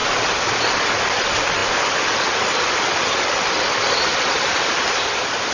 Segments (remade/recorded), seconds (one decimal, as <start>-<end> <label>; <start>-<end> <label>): 0.0-5.5 recorded